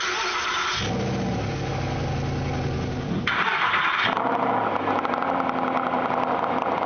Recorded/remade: recorded